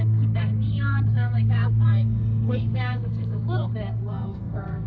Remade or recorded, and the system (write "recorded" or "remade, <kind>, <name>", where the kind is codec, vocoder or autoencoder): remade, codec, SNAC